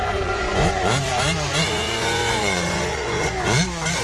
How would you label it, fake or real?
fake